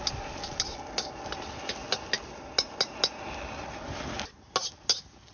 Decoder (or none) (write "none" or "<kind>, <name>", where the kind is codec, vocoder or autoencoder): none